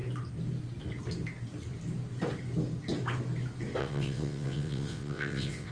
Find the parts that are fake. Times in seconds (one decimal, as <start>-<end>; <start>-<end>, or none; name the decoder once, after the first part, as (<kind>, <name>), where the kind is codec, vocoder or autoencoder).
3.8-5.7 (vocoder, WaveNeXt)